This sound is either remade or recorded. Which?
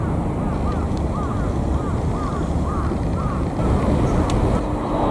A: recorded